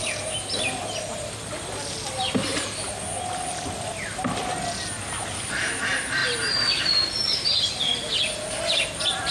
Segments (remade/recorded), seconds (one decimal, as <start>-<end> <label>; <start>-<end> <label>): 0.0-9.3 recorded

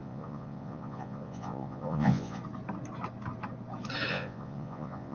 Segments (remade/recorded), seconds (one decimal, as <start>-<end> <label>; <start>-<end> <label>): 0.0-2.4 remade; 2.4-4.1 recorded; 4.1-5.1 remade

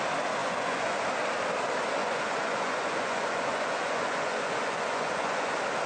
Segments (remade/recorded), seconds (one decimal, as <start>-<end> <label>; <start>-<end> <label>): 0.0-0.4 recorded; 0.4-1.0 remade; 1.0-2.0 recorded; 2.0-5.5 remade; 5.5-5.9 recorded

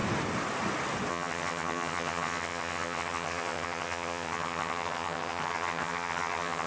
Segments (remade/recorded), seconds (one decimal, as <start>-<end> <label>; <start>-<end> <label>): 0.0-1.1 recorded; 1.1-6.7 remade

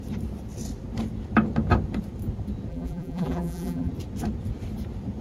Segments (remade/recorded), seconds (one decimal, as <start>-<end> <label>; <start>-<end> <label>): 0.0-2.7 recorded; 2.7-3.9 remade; 3.9-5.2 recorded